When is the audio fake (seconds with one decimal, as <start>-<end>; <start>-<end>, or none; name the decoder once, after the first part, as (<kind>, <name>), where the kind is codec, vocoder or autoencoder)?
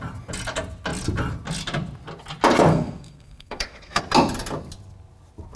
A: 2.7-4.0 (codec, SNAC)